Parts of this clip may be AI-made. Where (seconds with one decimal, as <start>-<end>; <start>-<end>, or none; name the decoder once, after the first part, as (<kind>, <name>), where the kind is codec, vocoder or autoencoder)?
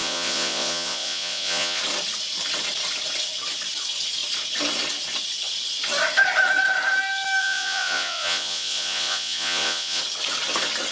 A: 0.0-1.8 (vocoder, Vocos); 7.4-10.0